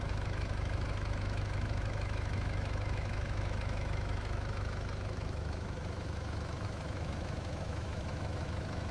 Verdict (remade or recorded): remade